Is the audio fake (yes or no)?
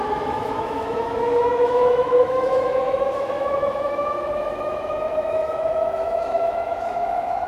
yes